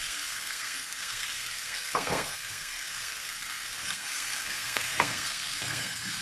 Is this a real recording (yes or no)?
no